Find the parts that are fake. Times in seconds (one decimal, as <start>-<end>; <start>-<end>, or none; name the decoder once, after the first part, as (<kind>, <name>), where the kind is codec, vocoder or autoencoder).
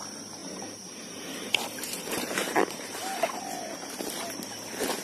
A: 0.4-3.4 (vocoder, BigVGAN v2)